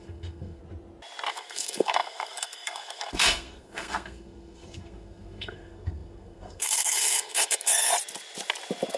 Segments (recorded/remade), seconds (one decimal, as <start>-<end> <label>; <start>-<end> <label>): 0.0-0.6 remade; 0.6-1.3 recorded; 1.3-7.9 remade; 7.9-9.0 recorded